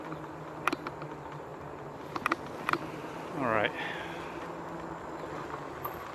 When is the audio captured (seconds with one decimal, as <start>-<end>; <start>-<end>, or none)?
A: 0.0-6.1

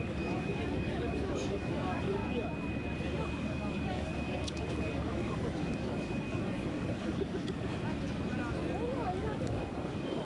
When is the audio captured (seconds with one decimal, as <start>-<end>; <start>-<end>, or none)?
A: 2.2-3.3; 7.7-8.9

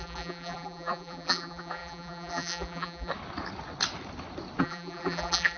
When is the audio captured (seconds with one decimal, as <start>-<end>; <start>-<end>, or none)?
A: 3.1-4.6

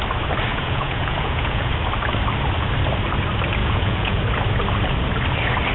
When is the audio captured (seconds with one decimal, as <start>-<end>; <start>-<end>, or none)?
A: 0.0-0.5; 1.7-3.6; 4.2-5.7

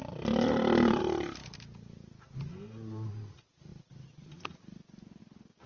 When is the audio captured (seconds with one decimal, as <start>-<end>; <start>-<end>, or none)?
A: 0.0-5.7

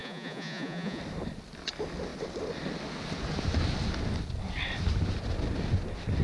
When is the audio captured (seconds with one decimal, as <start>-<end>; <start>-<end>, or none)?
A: 1.0-6.2

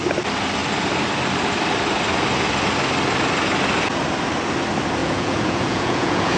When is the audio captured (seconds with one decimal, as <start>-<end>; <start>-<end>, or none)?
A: 0.0-5.0

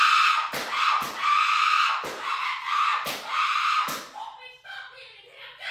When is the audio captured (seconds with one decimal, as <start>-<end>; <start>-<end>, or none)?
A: 0.0-2.9; 5.2-5.7